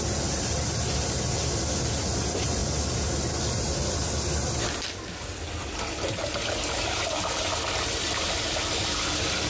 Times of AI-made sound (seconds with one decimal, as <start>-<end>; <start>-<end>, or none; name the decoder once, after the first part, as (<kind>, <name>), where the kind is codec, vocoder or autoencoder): none